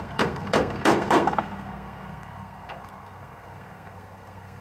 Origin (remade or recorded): remade